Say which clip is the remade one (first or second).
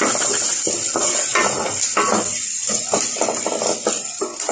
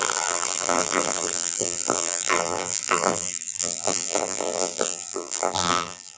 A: second